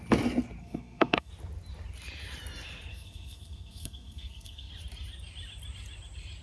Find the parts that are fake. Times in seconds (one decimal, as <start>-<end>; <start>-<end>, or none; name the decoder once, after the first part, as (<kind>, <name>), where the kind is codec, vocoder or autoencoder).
0.6-1.3 (codec, SNAC); 2.9-4.7